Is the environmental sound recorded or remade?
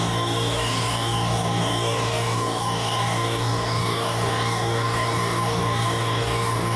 remade